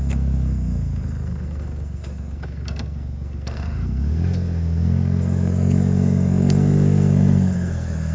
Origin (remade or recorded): remade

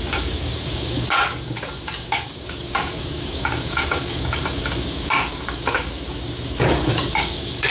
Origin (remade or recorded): remade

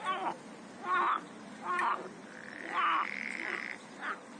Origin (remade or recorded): recorded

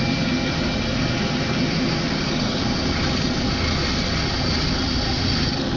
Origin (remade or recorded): recorded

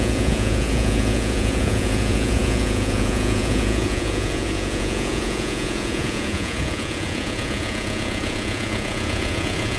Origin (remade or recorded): remade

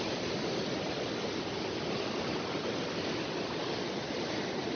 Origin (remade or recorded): recorded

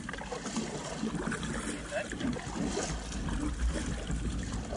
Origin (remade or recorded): recorded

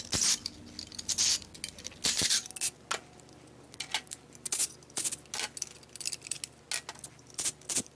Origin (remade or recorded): recorded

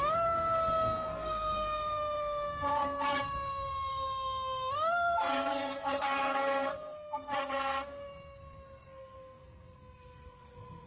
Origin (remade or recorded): remade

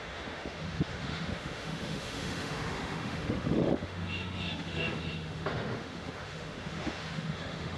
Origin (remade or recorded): remade